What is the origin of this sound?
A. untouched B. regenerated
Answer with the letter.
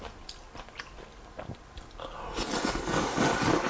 A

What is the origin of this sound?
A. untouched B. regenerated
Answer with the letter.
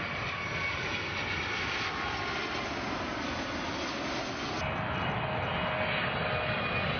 A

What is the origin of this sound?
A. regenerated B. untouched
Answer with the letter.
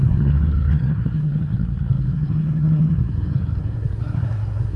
A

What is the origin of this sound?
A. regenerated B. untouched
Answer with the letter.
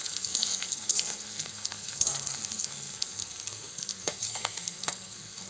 A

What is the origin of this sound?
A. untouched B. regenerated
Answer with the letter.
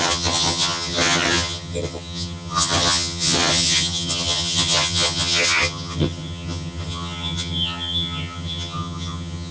B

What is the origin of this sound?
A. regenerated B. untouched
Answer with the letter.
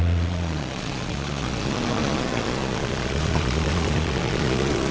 A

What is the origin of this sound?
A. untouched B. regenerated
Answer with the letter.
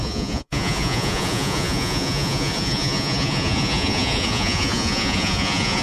B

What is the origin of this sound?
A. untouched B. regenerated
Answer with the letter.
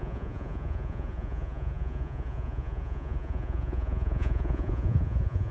B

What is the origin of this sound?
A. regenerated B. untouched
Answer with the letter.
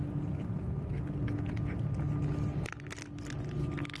B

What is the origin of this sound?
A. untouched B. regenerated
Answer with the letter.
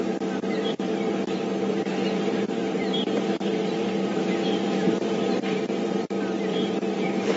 B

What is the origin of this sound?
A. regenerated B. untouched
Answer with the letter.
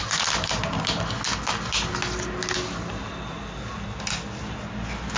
B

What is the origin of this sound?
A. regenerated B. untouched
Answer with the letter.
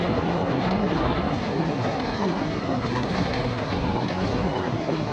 A